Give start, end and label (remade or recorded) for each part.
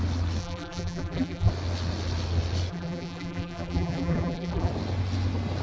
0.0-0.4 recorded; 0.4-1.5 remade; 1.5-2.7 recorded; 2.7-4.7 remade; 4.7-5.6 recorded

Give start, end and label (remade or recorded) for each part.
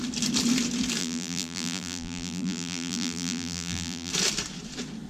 0.0-1.0 recorded; 1.0-4.1 remade; 4.1-5.1 recorded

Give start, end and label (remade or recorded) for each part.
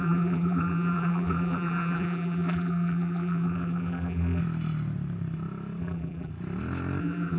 0.0-4.4 remade; 4.4-5.8 recorded; 5.8-6.3 remade; 6.3-7.0 recorded; 7.0-7.4 remade